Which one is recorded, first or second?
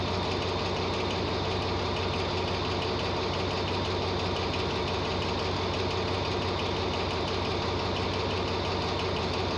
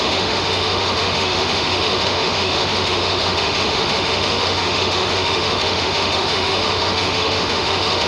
first